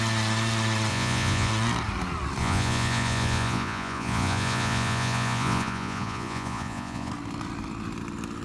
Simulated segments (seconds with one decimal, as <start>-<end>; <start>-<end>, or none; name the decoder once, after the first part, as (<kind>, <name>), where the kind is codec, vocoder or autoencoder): 0.9-1.5 (vocoder, Vocos); 2.4-7.1